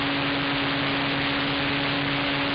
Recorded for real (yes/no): yes